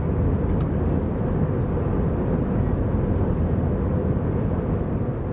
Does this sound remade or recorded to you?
recorded